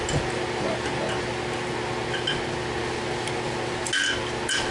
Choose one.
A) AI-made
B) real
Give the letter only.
B